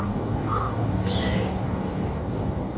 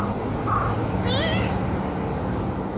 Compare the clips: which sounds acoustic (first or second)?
second